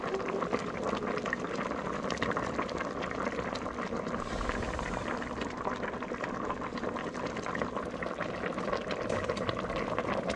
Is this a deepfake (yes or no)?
no